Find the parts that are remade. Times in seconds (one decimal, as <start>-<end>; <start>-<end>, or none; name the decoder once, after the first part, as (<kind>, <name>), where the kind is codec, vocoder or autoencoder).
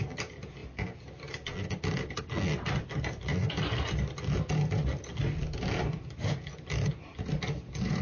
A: none